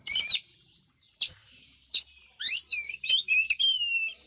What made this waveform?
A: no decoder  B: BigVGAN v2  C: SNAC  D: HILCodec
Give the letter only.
B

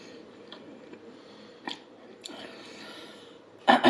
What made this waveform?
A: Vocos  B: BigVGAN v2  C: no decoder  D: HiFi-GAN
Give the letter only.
B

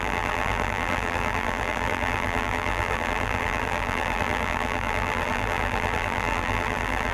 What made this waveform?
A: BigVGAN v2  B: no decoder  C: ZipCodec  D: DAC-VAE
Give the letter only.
A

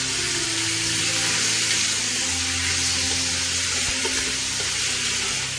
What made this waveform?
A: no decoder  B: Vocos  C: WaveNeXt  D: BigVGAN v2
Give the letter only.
A